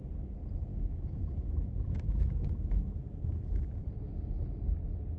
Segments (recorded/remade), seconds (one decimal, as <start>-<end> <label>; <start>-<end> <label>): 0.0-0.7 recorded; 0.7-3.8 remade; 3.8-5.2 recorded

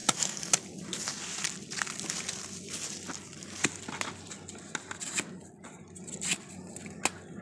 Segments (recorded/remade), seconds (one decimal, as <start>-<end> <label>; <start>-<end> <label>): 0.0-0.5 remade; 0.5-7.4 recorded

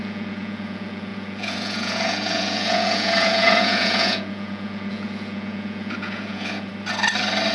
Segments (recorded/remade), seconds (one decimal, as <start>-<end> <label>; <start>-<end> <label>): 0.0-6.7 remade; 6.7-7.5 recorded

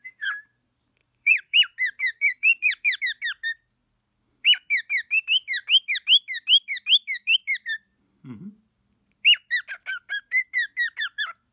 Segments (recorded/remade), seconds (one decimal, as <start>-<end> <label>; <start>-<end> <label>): 0.0-1.0 recorded; 1.0-3.0 remade; 3.0-9.9 recorded; 9.9-11.5 remade